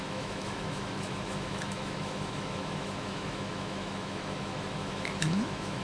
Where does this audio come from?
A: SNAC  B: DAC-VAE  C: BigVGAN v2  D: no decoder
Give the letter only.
B